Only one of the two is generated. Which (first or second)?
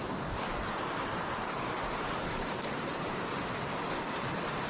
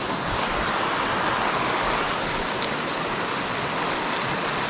first